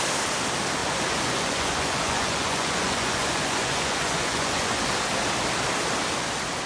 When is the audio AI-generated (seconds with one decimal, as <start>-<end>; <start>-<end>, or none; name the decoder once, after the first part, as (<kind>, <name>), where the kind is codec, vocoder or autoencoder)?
0.8-4.8 (vocoder, Vocos)